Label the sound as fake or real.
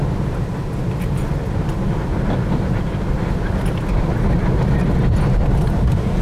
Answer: real